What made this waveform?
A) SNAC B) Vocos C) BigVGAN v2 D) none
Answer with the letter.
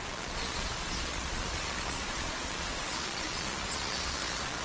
B